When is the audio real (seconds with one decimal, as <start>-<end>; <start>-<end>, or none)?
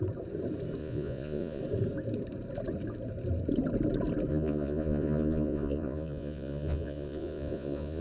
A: 0.0-0.8; 1.6-4.3